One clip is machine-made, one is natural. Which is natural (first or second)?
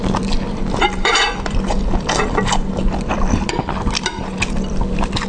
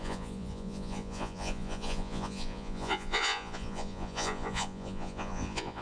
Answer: first